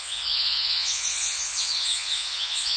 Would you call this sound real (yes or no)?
no